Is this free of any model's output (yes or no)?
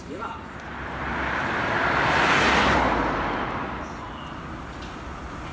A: yes